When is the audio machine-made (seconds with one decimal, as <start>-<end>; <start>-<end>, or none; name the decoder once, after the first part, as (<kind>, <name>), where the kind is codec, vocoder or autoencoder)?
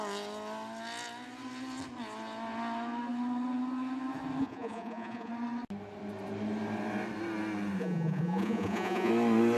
4.4-5.3 (vocoder, Vocos); 7.8-9.1